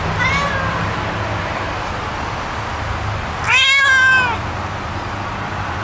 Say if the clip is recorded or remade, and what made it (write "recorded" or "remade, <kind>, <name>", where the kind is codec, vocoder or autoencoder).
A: recorded